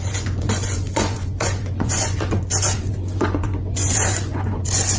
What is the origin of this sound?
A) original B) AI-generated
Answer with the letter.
B